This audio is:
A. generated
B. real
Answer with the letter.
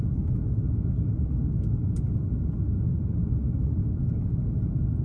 B